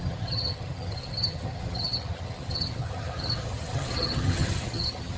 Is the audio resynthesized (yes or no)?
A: yes